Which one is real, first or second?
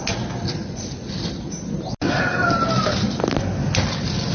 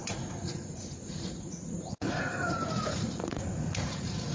first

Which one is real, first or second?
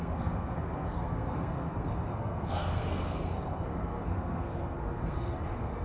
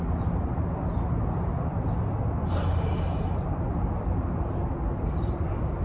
second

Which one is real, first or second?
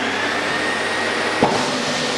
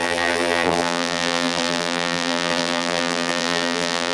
first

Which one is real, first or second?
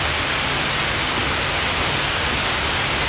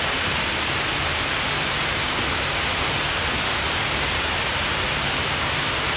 first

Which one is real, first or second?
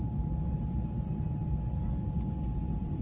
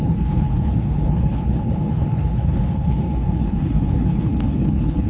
first